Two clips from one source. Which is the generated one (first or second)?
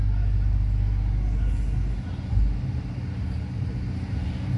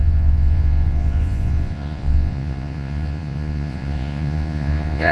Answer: second